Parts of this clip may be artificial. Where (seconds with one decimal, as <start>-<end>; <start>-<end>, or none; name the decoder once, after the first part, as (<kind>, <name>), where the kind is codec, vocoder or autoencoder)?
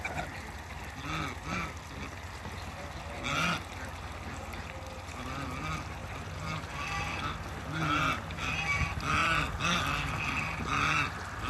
none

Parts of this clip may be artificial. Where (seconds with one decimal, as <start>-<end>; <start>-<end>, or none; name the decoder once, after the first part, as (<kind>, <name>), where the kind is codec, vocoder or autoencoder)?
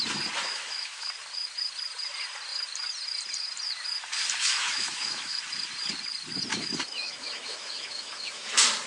0.4-1.1 (autoencoder, DAC-VAE); 4.4-5.4; 6.5-8.5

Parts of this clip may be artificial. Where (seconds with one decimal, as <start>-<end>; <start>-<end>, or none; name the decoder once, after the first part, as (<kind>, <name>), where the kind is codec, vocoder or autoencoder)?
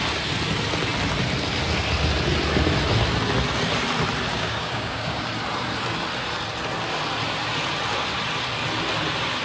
4.3-5.3 (codec, DAC)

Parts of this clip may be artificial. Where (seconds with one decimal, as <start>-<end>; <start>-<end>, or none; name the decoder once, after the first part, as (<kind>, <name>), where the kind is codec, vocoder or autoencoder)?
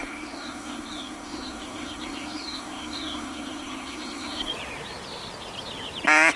0.0-4.5 (codec, SNAC)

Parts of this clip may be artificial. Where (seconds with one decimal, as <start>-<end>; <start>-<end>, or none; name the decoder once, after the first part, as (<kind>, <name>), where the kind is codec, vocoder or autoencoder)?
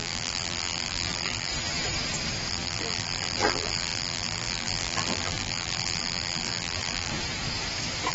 0.0-1.5 (vocoder, BigVGAN v2); 2.5-7.1